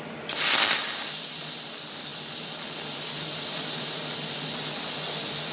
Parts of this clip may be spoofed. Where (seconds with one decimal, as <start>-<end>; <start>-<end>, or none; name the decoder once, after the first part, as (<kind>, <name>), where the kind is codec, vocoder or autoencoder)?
none